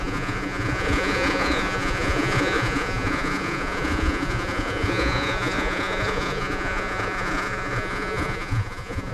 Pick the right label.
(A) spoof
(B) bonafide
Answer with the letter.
A